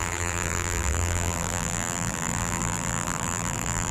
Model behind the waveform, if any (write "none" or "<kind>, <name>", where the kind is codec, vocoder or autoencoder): vocoder, BigVGAN v2